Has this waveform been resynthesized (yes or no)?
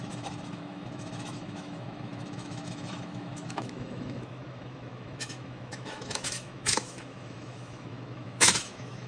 yes